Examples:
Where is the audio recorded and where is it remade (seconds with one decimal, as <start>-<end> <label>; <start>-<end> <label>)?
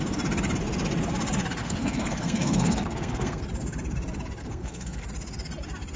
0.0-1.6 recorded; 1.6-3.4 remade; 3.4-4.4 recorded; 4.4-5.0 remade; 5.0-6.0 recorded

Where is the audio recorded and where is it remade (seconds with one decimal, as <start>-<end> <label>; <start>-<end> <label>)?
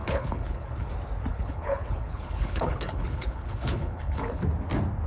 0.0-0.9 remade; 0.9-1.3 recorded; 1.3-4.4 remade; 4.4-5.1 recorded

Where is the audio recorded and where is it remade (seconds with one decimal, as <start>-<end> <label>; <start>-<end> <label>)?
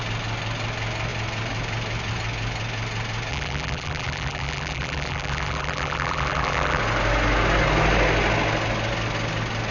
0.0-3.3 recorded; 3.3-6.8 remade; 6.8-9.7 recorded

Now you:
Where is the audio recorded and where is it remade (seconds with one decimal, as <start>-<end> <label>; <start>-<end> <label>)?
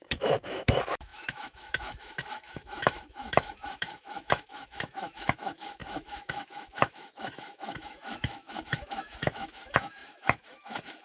0.0-11.0 remade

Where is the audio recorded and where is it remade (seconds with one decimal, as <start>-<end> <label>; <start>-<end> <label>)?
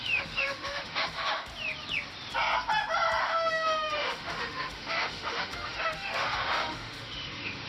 0.0-1.5 remade; 1.5-3.2 recorded; 3.2-7.7 remade